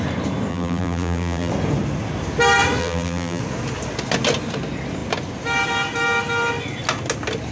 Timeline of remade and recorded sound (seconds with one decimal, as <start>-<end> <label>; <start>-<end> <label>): 0.0-0.5 recorded; 0.5-1.5 remade; 1.5-2.8 recorded; 2.8-3.4 remade; 3.4-7.5 recorded